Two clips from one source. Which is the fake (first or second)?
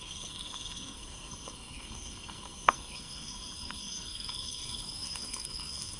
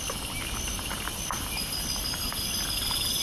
first